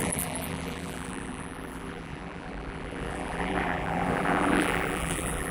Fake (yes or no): yes